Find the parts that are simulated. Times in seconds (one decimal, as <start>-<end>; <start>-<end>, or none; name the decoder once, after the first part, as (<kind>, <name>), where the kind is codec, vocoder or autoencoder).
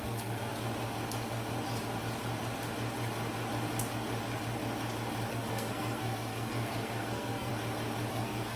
0.0-0.5 (codec, SNAC); 5.3-7.5; 8.1-8.6